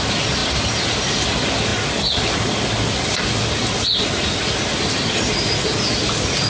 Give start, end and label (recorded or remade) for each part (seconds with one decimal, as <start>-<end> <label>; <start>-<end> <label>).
0.0-6.5 recorded